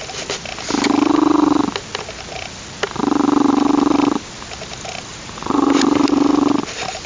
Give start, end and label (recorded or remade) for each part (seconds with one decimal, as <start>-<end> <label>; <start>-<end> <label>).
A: 0.0-5.1 recorded; 5.1-5.8 remade; 5.8-7.1 recorded